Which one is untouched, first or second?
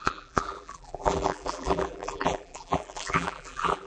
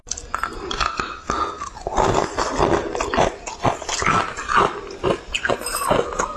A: second